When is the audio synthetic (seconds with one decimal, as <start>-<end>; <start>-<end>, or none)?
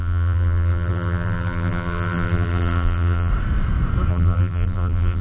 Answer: 0.0-3.3; 4.1-5.2